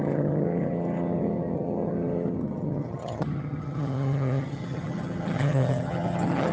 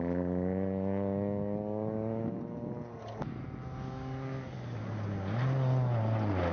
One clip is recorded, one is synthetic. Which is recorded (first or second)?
second